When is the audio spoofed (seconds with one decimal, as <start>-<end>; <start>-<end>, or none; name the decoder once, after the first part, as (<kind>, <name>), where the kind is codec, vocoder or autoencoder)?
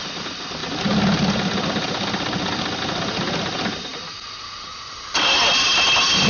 none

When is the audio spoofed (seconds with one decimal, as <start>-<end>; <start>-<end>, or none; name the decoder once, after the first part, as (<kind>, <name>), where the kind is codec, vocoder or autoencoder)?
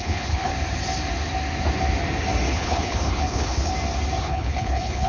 0.0-0.5 (codec, HILCodec); 2.5-3.7; 4.2-5.1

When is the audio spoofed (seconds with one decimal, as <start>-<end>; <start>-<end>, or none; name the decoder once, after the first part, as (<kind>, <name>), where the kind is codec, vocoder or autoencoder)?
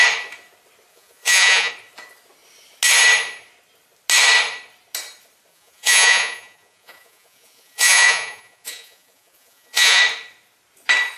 0.9-1.7 (vocoder, Vocos); 5.5-10.0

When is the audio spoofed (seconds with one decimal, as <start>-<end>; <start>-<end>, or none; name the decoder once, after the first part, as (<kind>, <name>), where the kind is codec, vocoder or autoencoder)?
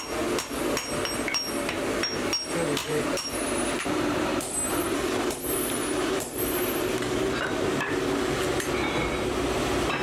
2.8-7.7 (vocoder, BigVGAN v2)